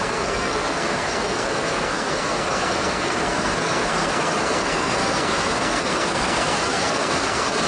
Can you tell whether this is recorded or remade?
remade